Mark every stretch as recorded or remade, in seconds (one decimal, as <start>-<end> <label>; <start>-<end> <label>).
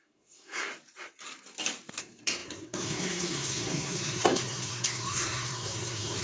0.0-0.7 remade; 0.7-2.0 recorded; 2.0-6.2 remade